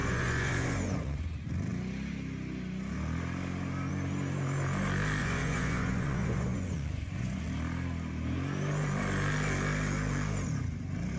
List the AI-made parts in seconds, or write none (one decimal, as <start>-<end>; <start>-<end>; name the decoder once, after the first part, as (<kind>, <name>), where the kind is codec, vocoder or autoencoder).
0.0-1.2 (vocoder, Vocos); 5.2-7.5